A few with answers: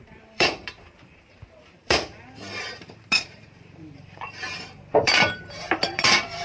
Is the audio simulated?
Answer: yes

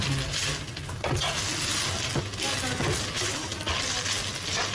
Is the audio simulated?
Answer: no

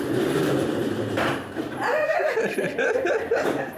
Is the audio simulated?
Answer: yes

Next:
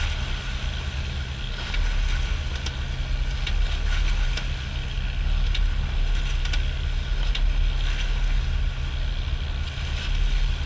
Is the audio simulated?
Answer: no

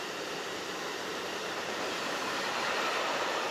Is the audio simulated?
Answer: yes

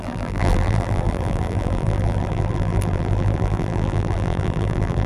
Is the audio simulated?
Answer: yes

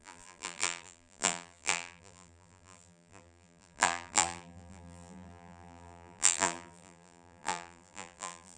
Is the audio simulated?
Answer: yes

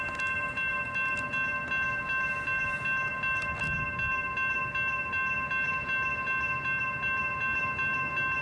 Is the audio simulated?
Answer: no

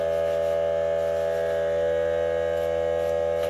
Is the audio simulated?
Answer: no